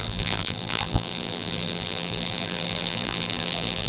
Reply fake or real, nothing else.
fake